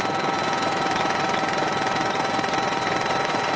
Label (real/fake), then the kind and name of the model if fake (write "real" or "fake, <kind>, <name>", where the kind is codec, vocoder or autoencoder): fake, vocoder, BigVGAN v2